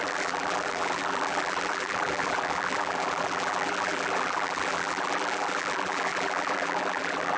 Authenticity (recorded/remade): remade